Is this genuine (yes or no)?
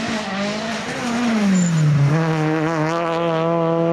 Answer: yes